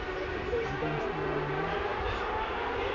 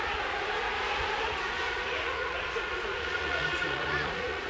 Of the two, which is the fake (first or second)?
second